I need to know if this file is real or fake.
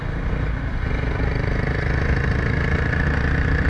real